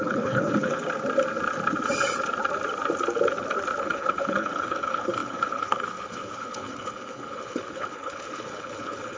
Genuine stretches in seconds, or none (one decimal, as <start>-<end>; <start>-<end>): 0.8-3.8